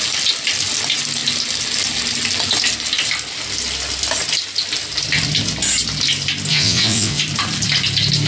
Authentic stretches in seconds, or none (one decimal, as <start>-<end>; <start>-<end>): 0.0-6.5; 7.2-8.3